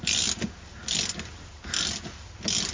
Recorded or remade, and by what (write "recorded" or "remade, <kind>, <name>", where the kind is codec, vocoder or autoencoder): recorded